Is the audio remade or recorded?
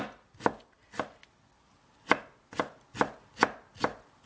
recorded